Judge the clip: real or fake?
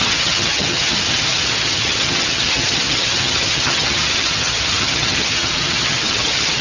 fake